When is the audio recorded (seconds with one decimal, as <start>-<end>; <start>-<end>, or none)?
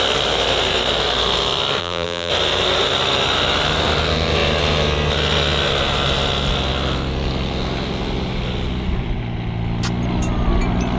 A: 0.0-1.8; 2.3-11.0